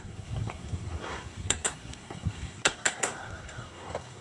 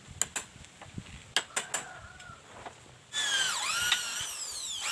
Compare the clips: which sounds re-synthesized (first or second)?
first